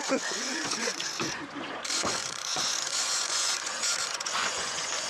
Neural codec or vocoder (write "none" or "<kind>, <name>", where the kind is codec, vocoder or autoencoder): vocoder, Vocos